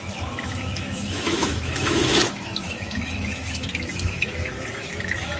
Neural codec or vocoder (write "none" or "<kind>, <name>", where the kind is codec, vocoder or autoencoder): autoencoder, DAC-VAE